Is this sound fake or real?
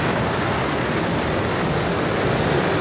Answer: fake